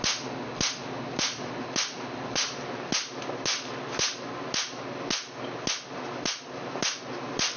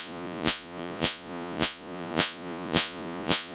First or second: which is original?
first